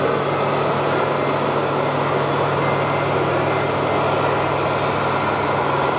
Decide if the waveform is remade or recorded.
recorded